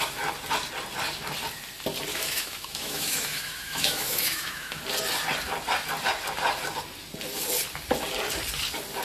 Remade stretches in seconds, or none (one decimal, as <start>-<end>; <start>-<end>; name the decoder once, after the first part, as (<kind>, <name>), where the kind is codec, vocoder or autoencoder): 2.1-4.8 (autoencoder, DAC-VAE)